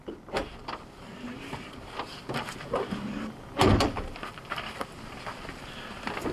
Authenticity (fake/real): real